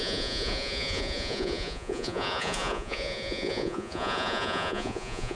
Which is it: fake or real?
fake